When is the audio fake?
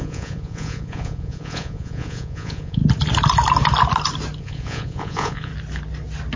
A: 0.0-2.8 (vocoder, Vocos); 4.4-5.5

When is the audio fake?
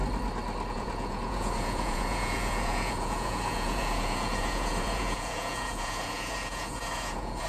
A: 0.7-7.5 (vocoder, Vocos)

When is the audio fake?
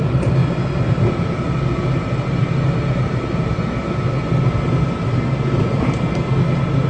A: none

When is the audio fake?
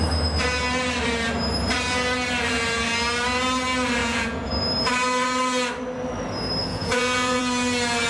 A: 4.0-4.5 (vocoder, Vocos); 6.6-7.4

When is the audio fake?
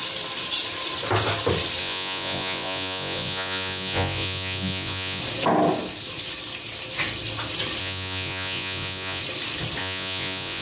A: 1.8-5.2 (vocoder, Vocos); 7.8-9.2; 9.8-10.6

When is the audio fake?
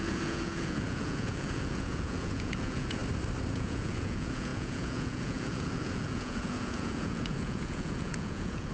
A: 0.0-3.0 (vocoder, Vocos); 3.5-8.7